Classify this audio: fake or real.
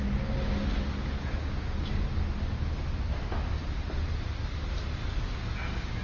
real